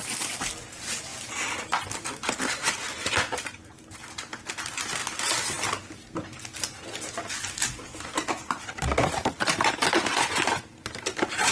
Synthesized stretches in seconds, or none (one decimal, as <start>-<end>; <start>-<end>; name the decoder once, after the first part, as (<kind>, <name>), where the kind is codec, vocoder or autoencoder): none